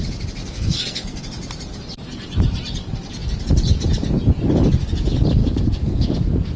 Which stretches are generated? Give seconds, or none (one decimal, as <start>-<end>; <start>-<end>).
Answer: 0.4-1.2; 5.4-6.1